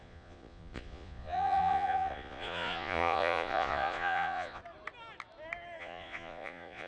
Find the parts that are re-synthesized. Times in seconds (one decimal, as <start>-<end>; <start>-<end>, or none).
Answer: 0.0-4.6; 5.8-6.9